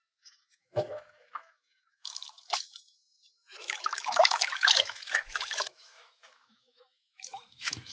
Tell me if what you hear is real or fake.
fake